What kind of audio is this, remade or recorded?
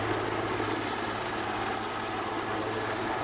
recorded